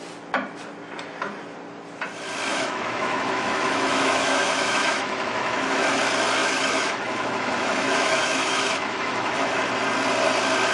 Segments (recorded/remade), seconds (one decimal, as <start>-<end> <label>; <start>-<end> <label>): 0.0-2.5 recorded; 2.5-6.0 remade; 6.0-6.4 recorded; 6.4-9.7 remade; 9.7-10.7 recorded